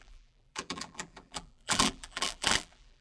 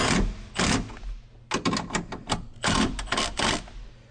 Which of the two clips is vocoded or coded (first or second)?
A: first